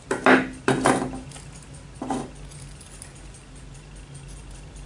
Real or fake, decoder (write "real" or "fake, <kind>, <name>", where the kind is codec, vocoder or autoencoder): real